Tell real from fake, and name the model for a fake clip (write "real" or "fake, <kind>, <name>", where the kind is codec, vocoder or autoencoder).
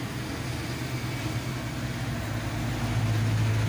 real